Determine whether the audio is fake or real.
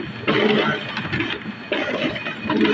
real